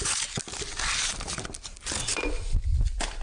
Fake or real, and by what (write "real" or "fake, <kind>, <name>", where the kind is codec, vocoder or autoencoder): real